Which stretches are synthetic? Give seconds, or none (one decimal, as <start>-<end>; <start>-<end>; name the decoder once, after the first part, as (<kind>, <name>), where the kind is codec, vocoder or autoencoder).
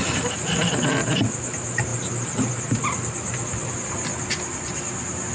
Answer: none